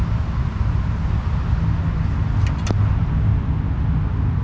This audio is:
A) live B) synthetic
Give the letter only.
A